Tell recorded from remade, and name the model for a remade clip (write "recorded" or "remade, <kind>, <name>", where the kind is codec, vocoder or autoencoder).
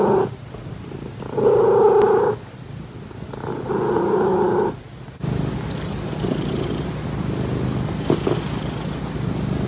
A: recorded